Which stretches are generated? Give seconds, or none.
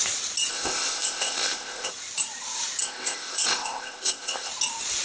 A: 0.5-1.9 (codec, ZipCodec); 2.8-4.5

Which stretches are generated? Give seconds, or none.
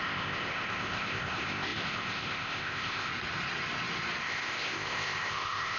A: 0.0-3.1 (codec, ZipCodec); 4.2-5.8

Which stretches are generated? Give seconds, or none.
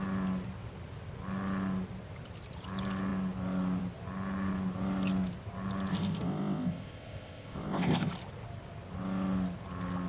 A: 5.9-8.1 (codec, ZipCodec)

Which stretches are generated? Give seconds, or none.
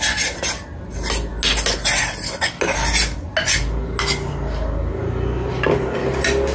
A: none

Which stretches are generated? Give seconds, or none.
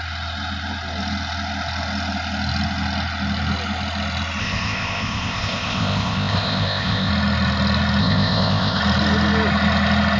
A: 4.4-7.1 (codec, ZipCodec); 8.0-8.8